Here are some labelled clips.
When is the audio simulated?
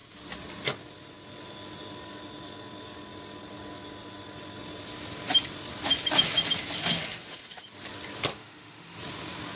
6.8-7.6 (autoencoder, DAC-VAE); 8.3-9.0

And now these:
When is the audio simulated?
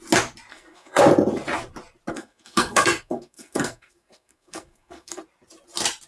0.5-1.0 (codec, SNAC); 2.1-5.2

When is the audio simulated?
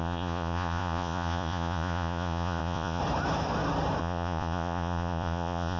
0.0-3.0 (vocoder, Vocos); 4.0-5.8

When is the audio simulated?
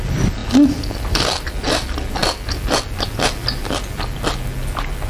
none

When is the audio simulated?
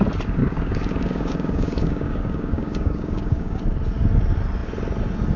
0.4-3.6 (codec, DAC)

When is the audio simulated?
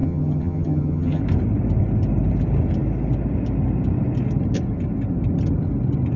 0.0-1.2 (vocoder, HiFi-GAN)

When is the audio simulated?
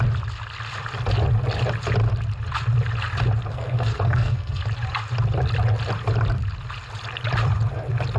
3.5-4.6 (codec, SNAC)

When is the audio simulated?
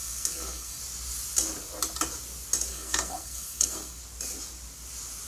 0.0-0.8 (codec, SNAC); 2.7-4.0